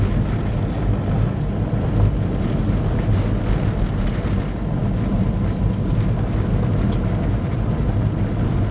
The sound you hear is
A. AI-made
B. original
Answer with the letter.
B